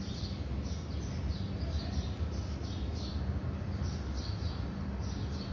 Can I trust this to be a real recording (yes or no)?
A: yes